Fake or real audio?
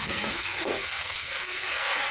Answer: fake